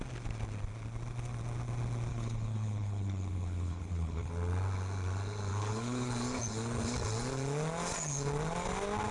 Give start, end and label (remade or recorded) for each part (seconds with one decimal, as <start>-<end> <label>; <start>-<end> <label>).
0.0-2.1 recorded; 2.1-4.3 remade; 4.3-5.5 recorded; 5.5-6.1 remade; 6.1-9.1 recorded